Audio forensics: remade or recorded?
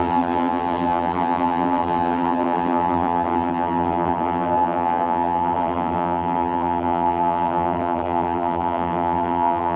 remade